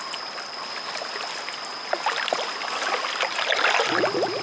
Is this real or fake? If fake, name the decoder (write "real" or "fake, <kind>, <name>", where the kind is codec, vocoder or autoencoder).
real